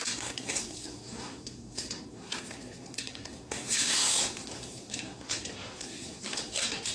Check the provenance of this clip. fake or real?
fake